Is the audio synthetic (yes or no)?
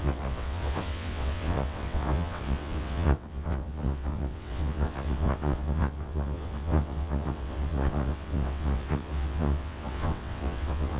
yes